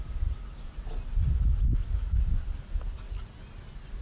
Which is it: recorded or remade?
recorded